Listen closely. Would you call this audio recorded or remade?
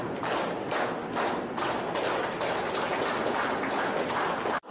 recorded